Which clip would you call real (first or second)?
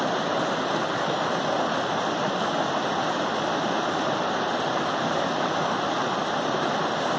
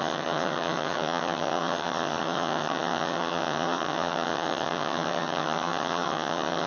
first